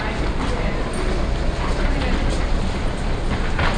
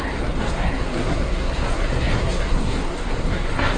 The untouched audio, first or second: first